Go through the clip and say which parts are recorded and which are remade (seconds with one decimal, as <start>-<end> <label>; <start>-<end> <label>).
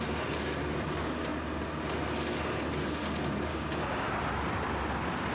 0.0-3.5 recorded; 3.5-4.1 remade; 4.1-5.3 recorded